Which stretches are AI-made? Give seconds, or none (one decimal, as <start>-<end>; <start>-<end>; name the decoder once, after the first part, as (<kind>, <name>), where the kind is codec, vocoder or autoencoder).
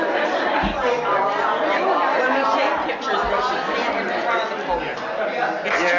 none